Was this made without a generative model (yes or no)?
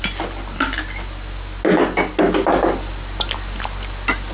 yes